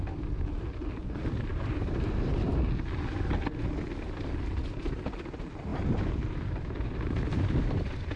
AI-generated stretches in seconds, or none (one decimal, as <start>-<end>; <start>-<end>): 1.5-2.5; 5.7-8.2